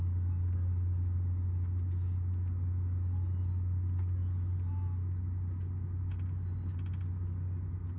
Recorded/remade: recorded